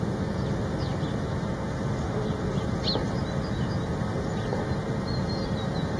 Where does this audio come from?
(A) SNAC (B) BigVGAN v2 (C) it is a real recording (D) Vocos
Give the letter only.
C